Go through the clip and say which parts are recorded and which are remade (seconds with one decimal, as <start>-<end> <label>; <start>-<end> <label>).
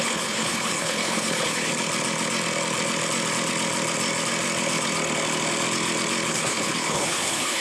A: 0.0-1.7 remade; 1.7-6.3 recorded; 6.3-7.6 remade